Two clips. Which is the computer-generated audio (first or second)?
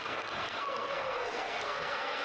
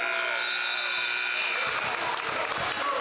first